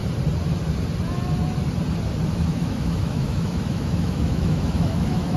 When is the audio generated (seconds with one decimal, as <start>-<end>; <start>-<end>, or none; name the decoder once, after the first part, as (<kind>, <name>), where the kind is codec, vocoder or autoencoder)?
2.3-5.4 (autoencoder, DAC-VAE)